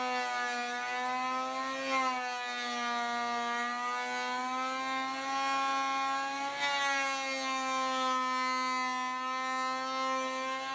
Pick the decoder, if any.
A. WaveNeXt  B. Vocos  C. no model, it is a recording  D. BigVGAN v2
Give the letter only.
C